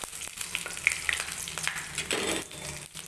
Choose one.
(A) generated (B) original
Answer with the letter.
B